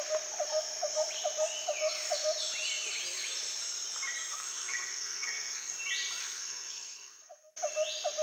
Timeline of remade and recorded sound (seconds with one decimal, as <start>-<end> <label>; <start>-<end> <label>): 0.0-4.3 recorded; 4.3-5.7 remade; 5.7-6.2 recorded; 6.2-7.5 remade; 7.5-8.2 recorded